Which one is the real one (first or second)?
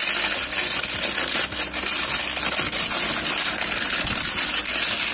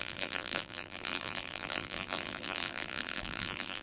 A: first